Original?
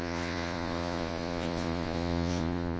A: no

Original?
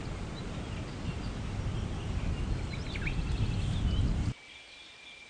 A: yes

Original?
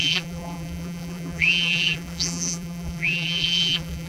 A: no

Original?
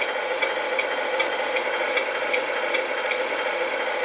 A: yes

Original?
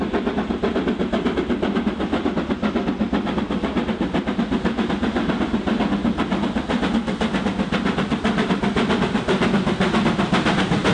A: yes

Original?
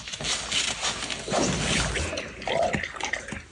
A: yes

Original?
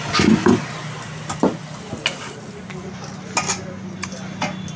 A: yes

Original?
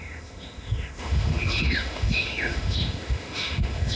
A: no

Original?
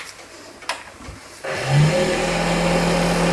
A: yes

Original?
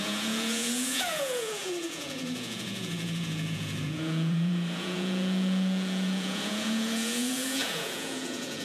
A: no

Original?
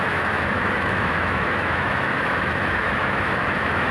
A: no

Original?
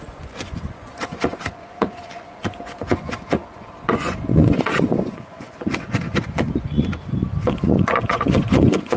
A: no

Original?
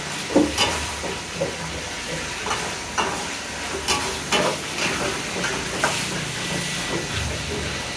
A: yes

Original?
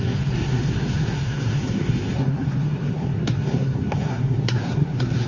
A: no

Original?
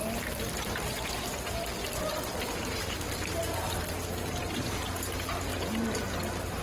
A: yes